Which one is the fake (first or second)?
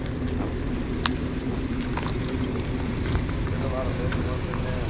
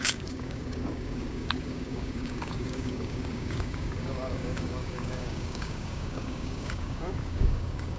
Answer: second